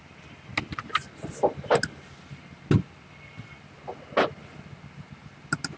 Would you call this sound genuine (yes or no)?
yes